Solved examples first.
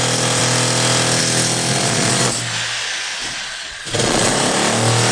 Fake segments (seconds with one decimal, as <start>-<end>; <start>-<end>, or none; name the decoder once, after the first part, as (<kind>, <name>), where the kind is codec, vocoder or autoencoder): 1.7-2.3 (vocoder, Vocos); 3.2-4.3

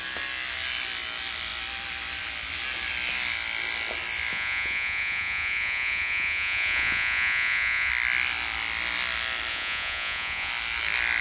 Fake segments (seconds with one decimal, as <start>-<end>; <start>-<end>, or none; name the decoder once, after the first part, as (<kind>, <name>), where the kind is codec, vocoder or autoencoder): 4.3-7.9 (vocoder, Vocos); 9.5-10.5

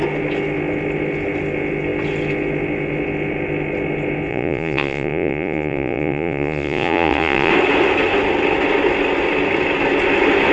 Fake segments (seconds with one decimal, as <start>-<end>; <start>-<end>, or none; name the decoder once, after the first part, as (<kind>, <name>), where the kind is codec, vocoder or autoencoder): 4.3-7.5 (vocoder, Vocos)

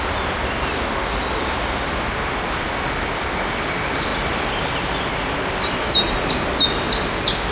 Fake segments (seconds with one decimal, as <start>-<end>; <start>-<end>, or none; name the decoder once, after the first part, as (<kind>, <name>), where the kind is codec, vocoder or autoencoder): none

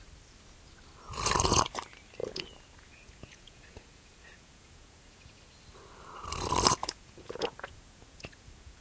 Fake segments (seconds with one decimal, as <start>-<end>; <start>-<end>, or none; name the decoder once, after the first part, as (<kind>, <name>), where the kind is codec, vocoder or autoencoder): 2.2-5.4 (vocoder, Vocos); 6.8-8.8

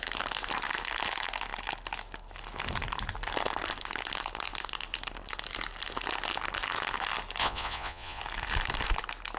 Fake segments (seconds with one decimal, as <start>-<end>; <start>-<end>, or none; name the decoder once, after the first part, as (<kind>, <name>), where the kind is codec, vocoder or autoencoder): 7.4-8.2 (vocoder, Vocos)

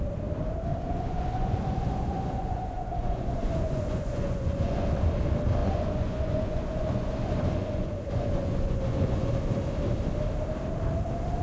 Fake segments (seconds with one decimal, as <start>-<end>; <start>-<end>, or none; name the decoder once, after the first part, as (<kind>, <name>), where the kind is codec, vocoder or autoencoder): 0.7-5.0 (vocoder, Vocos); 5.6-9.3